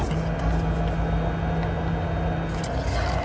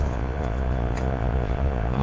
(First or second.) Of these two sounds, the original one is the first